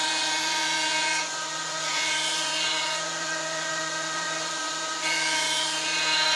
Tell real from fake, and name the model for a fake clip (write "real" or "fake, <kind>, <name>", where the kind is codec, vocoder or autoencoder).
fake, vocoder, Vocos